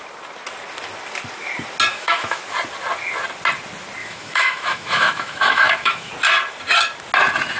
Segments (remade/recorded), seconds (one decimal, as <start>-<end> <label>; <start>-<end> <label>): 0.0-1.9 recorded; 1.9-2.4 remade; 2.4-4.0 recorded; 4.0-6.1 remade; 6.1-7.6 recorded